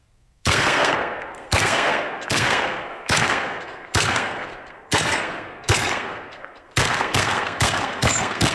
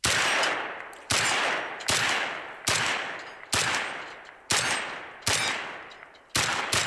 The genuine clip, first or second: second